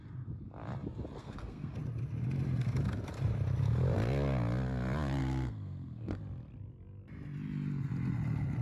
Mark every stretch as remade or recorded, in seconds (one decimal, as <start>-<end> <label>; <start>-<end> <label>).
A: 0.0-1.2 recorded; 1.2-1.8 remade; 1.8-5.2 recorded; 5.2-6.2 remade; 6.2-8.6 recorded